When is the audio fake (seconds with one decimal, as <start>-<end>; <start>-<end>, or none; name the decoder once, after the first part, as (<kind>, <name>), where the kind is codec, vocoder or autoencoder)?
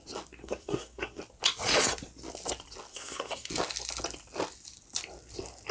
0.4-1.2 (codec, SNAC); 2.9-3.5